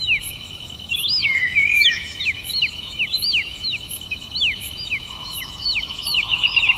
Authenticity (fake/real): fake